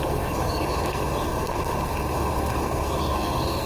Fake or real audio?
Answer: fake